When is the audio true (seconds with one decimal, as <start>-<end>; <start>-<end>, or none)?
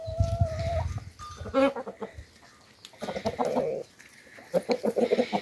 0.0-5.4